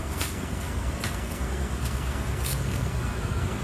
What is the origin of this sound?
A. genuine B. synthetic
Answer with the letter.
B